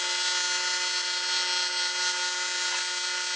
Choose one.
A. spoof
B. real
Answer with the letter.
B